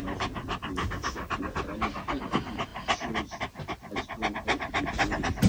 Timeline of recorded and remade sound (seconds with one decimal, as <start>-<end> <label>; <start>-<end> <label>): 0.0-0.8 recorded; 0.8-1.3 remade; 1.3-5.5 recorded